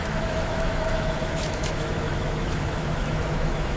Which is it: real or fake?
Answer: fake